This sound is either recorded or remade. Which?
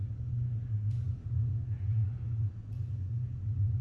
remade